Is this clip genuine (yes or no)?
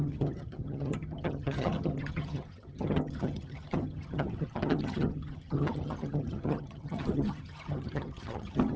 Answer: no